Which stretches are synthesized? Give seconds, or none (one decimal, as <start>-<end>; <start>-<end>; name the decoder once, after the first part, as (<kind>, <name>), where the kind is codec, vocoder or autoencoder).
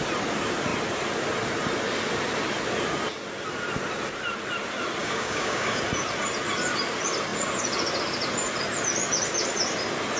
5.0-5.8 (codec, DAC)